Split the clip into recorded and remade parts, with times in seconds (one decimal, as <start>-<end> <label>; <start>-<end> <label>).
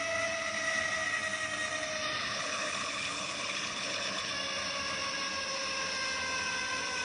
0.0-2.2 recorded; 2.2-4.3 remade; 4.3-7.0 recorded